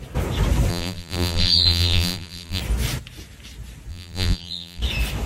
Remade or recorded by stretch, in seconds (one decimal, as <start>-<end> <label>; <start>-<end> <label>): 0.0-0.7 recorded; 0.7-2.6 remade; 2.6-3.9 recorded; 3.9-4.8 remade; 4.8-5.3 recorded